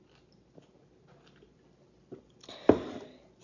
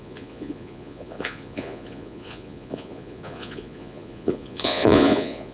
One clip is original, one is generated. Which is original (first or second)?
first